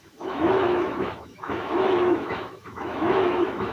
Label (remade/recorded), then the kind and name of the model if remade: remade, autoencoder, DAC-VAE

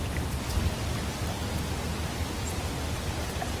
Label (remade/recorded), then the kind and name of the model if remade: recorded